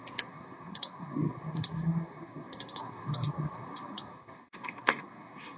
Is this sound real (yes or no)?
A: no